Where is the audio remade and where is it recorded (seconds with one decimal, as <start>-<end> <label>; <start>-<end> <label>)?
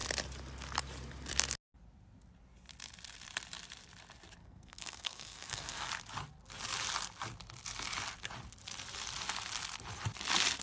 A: 0.0-4.4 recorded; 4.4-5.9 remade; 5.9-10.6 recorded